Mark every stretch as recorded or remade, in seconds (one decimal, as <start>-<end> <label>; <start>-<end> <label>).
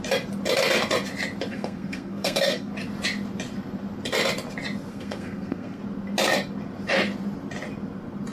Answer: 0.0-1.5 recorded; 1.5-2.7 remade; 2.7-4.9 recorded; 4.9-5.8 remade; 5.8-8.3 recorded